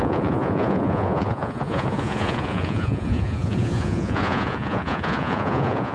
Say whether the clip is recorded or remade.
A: remade